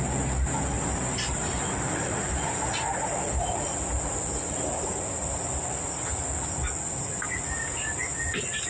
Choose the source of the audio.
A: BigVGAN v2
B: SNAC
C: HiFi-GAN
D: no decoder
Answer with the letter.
D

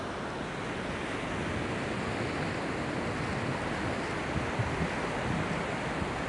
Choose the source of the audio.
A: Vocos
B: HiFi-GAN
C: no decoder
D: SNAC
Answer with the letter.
C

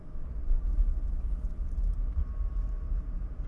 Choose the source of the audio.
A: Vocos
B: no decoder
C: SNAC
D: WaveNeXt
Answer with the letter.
B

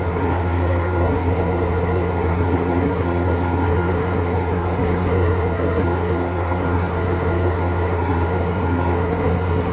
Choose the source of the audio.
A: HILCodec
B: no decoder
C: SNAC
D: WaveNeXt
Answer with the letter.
C